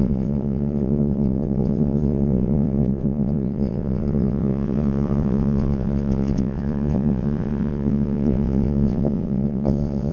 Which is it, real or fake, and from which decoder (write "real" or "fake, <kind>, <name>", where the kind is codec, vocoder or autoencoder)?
fake, vocoder, WaveNeXt